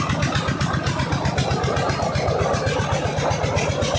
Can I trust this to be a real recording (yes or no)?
yes